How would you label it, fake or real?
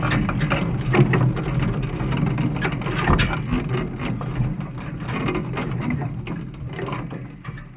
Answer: real